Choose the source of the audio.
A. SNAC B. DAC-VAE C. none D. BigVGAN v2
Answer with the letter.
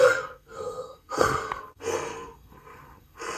A